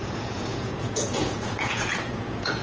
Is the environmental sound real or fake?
fake